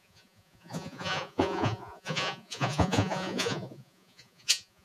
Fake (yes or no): yes